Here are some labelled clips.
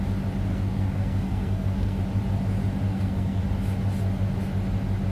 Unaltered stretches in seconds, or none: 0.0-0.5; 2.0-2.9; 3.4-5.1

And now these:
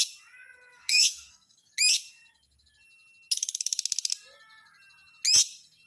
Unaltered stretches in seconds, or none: 0.0-0.7; 1.7-5.9

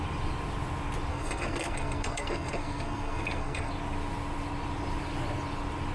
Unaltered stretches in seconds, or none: 0.0-1.1; 3.7-5.9

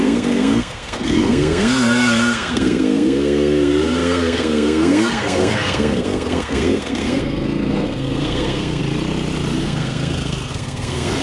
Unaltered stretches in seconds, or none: 8.8-9.6